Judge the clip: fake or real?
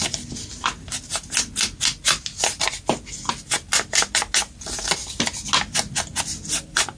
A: real